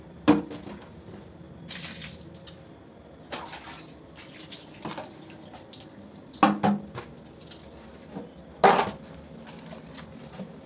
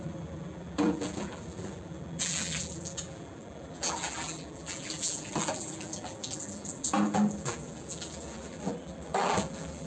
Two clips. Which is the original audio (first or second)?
first